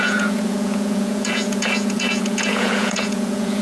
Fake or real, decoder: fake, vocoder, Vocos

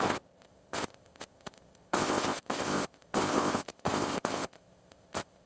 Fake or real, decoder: fake, codec, ZipCodec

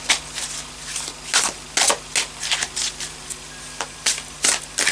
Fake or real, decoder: real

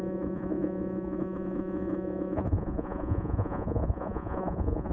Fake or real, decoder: fake, vocoder, Vocos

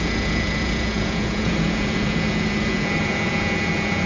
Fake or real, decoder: fake, vocoder, Vocos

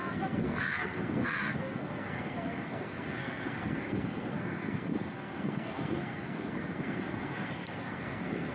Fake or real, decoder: fake, codec, SNAC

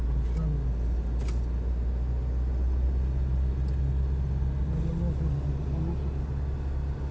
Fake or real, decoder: real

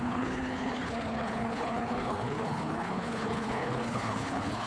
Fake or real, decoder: fake, codec, HILCodec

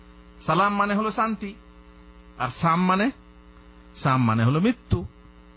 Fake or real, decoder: real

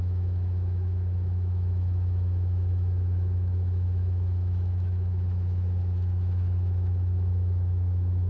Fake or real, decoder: fake, autoencoder, DAC-VAE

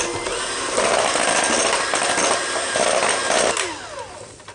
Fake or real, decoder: real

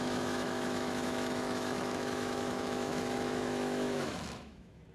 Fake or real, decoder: fake, autoencoder, DAC-VAE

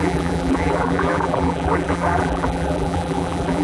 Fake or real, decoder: fake, vocoder, BigVGAN v2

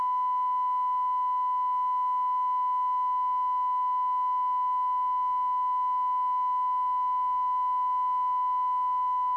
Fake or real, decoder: real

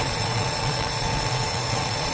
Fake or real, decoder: fake, vocoder, Vocos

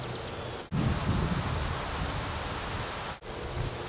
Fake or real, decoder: real